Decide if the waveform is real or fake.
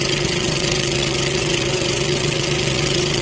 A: fake